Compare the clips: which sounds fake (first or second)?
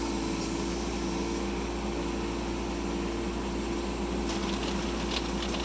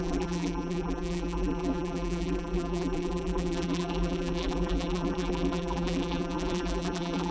second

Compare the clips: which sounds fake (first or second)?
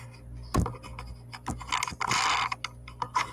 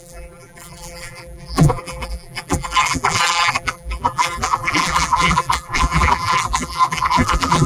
second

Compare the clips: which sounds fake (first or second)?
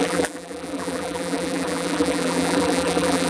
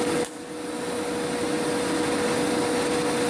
first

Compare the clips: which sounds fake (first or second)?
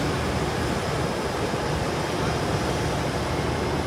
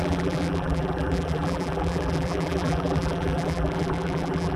second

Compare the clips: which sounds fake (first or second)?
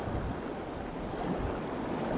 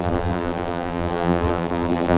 second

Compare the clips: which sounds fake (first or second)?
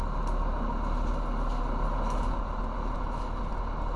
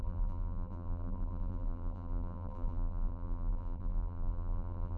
second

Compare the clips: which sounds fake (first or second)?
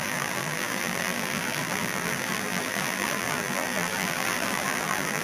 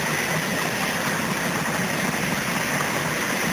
first